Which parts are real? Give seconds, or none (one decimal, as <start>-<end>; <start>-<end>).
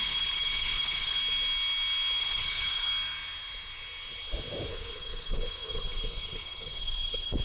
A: 1.2-2.2; 2.9-4.7